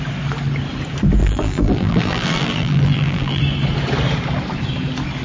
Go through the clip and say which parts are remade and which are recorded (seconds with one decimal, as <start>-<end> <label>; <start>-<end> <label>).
0.0-1.2 recorded; 1.2-3.4 remade; 3.4-5.2 recorded